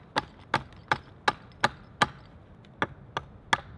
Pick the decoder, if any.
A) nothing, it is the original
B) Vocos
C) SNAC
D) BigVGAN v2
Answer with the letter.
A